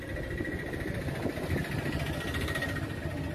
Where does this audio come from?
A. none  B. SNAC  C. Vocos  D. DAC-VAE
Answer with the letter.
A